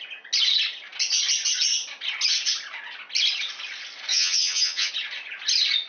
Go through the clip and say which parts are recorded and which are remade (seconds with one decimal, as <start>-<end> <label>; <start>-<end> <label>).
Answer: 0.0-4.1 recorded; 4.1-4.9 remade; 4.9-5.9 recorded